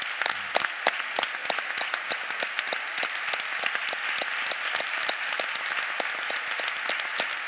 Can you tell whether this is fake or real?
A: real